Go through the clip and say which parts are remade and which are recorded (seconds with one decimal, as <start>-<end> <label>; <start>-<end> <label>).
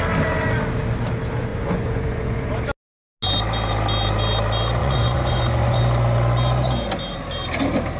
0.0-1.5 recorded; 1.5-2.5 remade; 2.5-4.8 recorded; 4.8-5.8 remade; 5.8-8.0 recorded